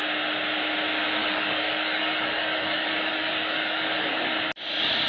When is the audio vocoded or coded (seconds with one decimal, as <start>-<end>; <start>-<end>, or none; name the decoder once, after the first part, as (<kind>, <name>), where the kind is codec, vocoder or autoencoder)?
1.2-4.3 (codec, DAC)